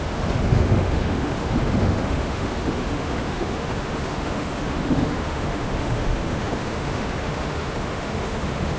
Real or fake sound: fake